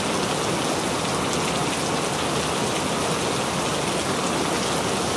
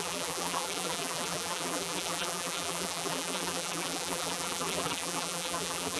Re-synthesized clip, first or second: second